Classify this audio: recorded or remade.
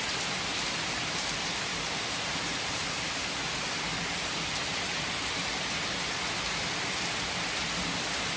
recorded